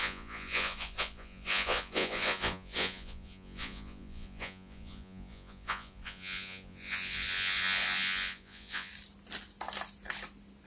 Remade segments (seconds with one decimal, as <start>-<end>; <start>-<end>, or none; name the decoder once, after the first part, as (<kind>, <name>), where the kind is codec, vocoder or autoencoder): 0.0-8.9 (vocoder, Vocos)

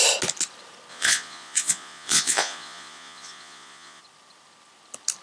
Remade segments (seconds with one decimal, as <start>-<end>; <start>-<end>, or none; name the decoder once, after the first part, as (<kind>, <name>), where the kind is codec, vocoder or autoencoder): 0.9-4.0 (vocoder, Vocos)

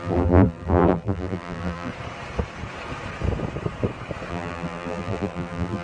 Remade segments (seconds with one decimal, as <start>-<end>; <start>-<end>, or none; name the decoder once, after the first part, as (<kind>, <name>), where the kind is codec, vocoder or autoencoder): 0.0-1.9 (vocoder, BigVGAN v2); 4.3-5.8

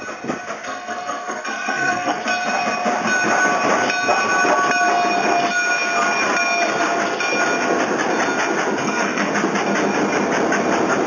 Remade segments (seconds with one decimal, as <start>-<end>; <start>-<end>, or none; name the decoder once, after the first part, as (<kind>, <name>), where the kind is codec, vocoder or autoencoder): 0.6-2.2 (codec, SNAC); 8.8-9.3

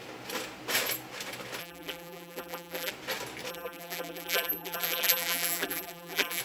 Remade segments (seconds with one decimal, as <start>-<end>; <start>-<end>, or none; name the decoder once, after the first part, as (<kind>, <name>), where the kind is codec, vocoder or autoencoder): 1.6-2.9 (vocoder, BigVGAN v2); 3.5-6.4

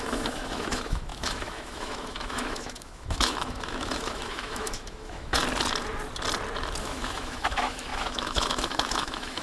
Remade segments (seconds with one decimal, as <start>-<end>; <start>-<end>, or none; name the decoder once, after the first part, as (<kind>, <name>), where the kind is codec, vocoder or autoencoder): 0.0-5.4 (autoencoder, DAC-VAE); 6.8-9.4

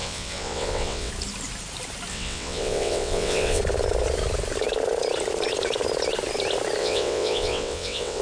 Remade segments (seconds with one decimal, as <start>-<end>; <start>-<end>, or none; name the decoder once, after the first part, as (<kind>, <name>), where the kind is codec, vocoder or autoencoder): 0.0-1.1 (vocoder, WaveNeXt); 2.1-3.6; 6.8-8.2

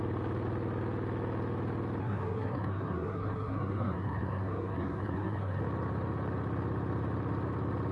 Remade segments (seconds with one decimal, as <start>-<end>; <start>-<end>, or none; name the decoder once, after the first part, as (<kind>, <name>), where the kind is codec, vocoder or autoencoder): 2.0-5.6 (codec, SNAC)